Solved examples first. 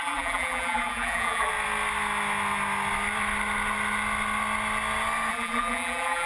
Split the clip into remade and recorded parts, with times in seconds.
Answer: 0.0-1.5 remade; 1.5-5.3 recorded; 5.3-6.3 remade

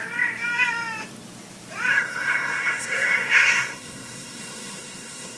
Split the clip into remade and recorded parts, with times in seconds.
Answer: 0.0-1.9 recorded; 1.9-5.4 remade

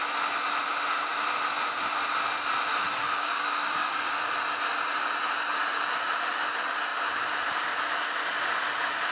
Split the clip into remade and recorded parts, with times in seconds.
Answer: 0.0-2.7 recorded; 2.7-4.2 remade; 4.2-9.1 recorded

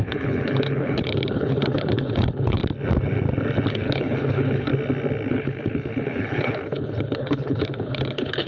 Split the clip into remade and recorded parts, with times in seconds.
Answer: 0.0-2.6 remade; 2.6-3.7 recorded; 3.7-4.7 remade; 4.7-5.3 recorded; 5.3-8.5 remade

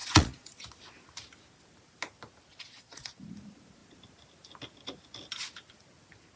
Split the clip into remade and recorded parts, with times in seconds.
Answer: 0.0-0.6 remade; 0.6-2.5 recorded; 2.5-3.1 remade; 3.1-6.4 recorded